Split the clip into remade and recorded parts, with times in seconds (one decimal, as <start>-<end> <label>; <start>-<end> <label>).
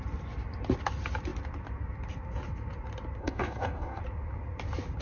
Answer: 0.0-3.2 recorded; 3.2-4.0 remade; 4.0-5.0 recorded